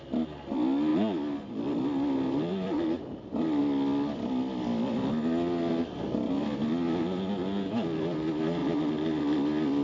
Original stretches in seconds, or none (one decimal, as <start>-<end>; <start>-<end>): 0.0-9.8